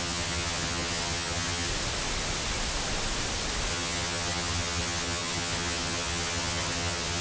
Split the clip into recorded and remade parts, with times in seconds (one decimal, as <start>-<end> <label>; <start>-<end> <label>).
0.0-1.7 remade; 1.7-3.7 recorded; 3.7-7.2 remade